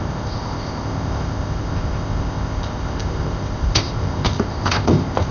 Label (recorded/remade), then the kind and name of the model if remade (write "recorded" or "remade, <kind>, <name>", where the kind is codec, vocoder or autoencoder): remade, codec, ZipCodec